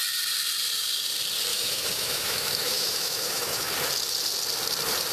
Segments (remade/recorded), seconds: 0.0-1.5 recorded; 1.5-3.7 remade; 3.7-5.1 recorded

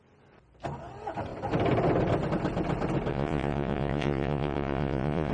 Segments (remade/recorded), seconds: 0.0-3.1 recorded; 3.1-5.3 remade

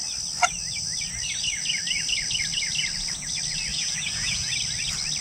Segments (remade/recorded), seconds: 0.0-3.7 recorded; 3.7-4.5 remade; 4.5-5.2 recorded

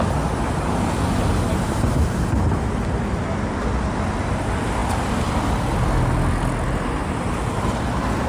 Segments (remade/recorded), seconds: 0.0-8.3 recorded

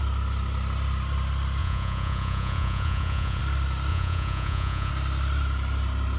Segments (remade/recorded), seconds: 0.0-1.6 recorded; 1.6-3.4 remade; 3.4-3.9 recorded; 3.9-4.9 remade; 4.9-6.2 recorded

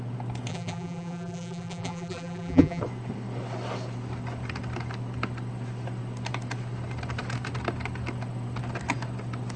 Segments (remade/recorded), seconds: 0.0-0.5 recorded; 0.5-2.8 remade; 2.8-9.6 recorded

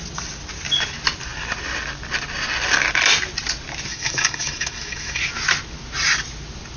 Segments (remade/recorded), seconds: 0.0-3.9 recorded; 3.9-5.2 remade; 5.2-6.8 recorded